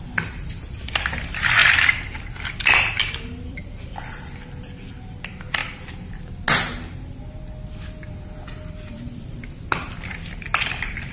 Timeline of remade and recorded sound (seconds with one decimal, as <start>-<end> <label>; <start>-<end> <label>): 0.0-1.6 remade; 1.6-2.5 recorded; 2.5-5.6 remade; 5.6-8.5 recorded; 8.5-11.1 remade

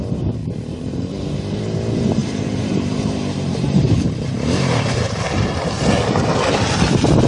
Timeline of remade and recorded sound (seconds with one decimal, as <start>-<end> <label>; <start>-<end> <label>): 0.0-0.4 recorded; 0.4-1.6 remade; 1.6-2.2 recorded; 2.2-5.2 remade; 5.2-7.3 recorded

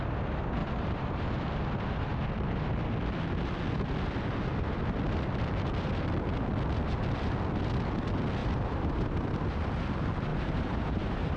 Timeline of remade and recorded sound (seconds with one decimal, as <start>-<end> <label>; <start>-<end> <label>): 0.0-0.6 recorded; 0.6-1.2 remade; 1.2-8.4 recorded; 8.4-9.4 remade; 9.4-10.3 recorded; 10.3-11.4 remade

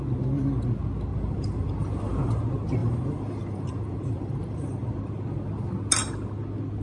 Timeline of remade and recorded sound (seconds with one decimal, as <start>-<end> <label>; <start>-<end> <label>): 0.0-1.1 recorded; 1.1-2.4 remade; 2.4-2.8 recorded; 2.8-5.0 remade; 5.0-6.8 recorded

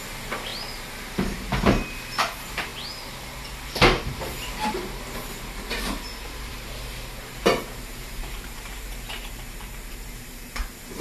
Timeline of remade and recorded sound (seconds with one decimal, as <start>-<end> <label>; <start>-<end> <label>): 0.0-0.5 remade; 0.5-1.0 recorded; 1.0-2.7 remade; 2.7-4.0 recorded; 4.0-11.0 remade